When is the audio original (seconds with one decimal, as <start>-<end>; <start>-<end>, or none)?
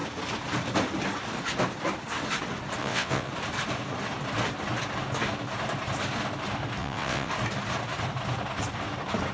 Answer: 0.0-2.8; 3.3-6.8; 7.3-9.3